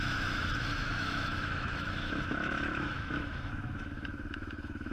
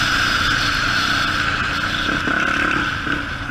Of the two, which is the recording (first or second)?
second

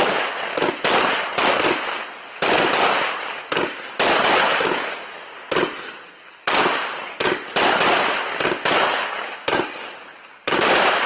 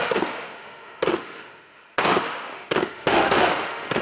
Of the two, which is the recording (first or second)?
first